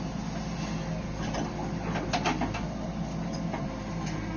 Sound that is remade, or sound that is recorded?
recorded